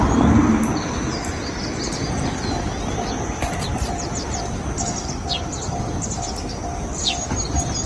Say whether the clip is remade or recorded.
recorded